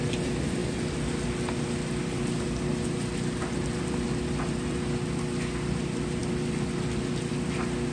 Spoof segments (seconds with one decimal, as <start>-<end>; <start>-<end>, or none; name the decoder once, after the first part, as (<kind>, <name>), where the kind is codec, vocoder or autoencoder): none